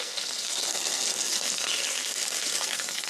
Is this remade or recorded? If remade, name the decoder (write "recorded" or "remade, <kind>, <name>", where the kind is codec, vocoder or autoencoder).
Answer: remade, codec, SNAC